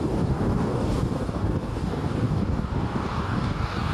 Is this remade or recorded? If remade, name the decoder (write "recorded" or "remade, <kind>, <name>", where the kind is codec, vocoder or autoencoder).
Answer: remade, codec, DAC